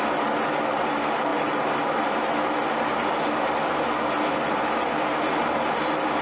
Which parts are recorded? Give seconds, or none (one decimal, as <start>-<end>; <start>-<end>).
0.0-6.2